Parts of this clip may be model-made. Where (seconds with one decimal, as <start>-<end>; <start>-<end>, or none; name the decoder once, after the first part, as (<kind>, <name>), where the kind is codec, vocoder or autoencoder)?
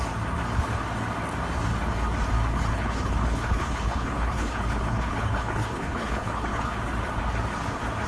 2.5-6.7 (codec, HILCodec)